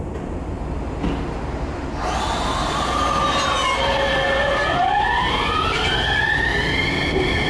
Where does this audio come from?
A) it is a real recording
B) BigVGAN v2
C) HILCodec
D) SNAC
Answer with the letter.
A